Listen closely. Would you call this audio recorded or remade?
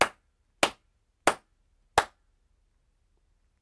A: recorded